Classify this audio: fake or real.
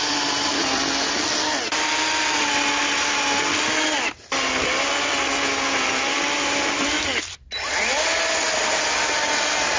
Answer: real